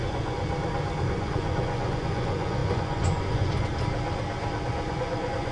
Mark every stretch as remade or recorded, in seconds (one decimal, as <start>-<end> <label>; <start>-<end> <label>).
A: 0.0-0.4 remade; 0.4-1.0 recorded; 1.0-3.7 remade; 3.7-4.7 recorded; 4.7-5.5 remade